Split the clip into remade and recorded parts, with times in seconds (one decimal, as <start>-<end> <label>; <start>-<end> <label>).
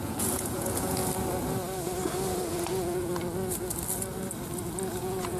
0.0-1.0 remade; 1.0-2.5 recorded; 2.5-3.1 remade; 3.1-5.0 recorded; 5.0-5.4 remade